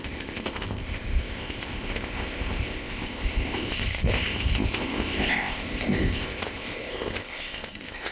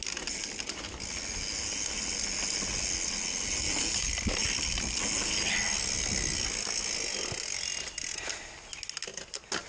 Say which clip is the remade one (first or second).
first